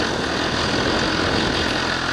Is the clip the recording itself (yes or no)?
yes